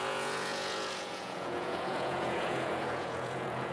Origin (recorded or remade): remade